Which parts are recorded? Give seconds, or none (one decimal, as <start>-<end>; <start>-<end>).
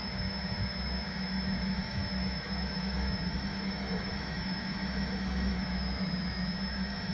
none